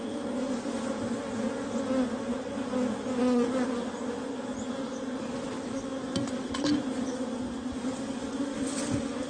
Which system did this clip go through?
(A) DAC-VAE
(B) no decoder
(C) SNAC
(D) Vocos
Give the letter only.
B